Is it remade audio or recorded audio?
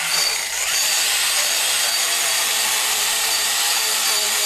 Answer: remade